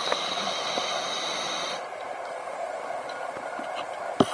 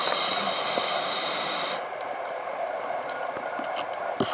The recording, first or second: second